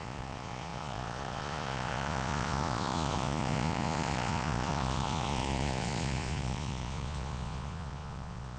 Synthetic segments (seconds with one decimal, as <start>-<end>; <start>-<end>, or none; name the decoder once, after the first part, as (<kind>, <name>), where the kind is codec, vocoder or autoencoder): 0.0-8.6 (vocoder, Vocos)